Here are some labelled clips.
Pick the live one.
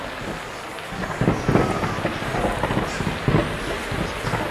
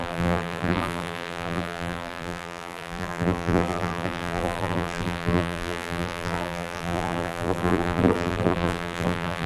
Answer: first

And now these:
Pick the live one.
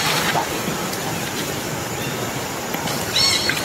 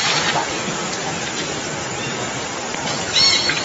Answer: second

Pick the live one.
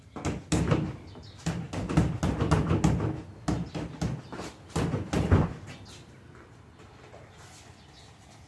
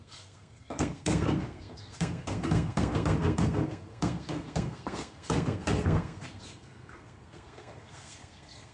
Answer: first